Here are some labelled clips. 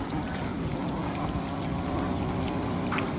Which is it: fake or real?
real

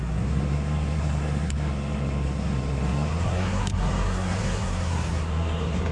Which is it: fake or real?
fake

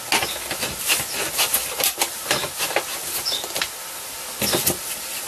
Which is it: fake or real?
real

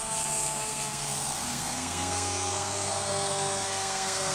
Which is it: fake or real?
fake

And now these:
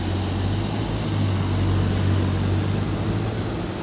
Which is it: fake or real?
real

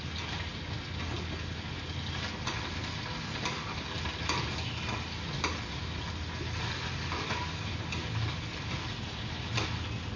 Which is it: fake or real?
real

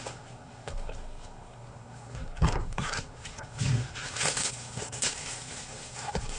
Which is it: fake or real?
fake